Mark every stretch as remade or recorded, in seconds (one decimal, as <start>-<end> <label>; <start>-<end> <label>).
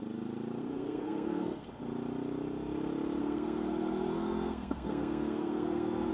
0.0-0.6 recorded; 0.6-1.7 remade; 1.7-3.2 recorded; 3.2-6.1 remade